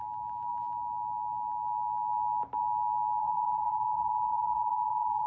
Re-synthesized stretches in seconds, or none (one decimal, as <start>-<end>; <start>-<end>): 3.2-5.3